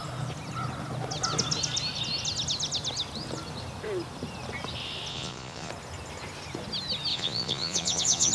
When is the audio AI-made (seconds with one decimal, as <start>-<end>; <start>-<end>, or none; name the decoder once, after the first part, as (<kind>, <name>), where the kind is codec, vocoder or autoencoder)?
5.1-5.7 (vocoder, Vocos); 7.1-8.3